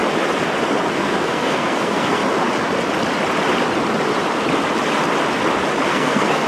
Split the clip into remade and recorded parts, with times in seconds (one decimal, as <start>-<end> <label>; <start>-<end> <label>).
0.0-0.9 recorded; 0.9-2.2 remade; 2.2-5.9 recorded; 5.9-6.5 remade